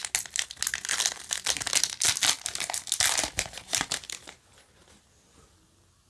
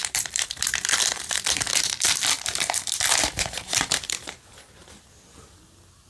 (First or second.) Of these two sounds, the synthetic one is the second